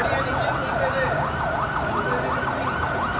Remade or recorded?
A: recorded